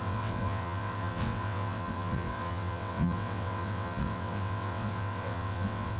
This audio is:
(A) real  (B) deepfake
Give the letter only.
B